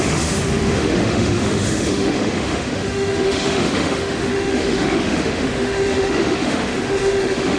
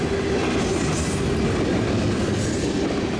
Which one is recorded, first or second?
second